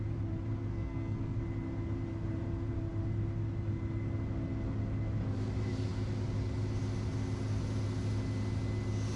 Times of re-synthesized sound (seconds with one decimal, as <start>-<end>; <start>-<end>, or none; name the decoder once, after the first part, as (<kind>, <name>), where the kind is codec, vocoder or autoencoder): 0.7-1.4 (codec, SNAC)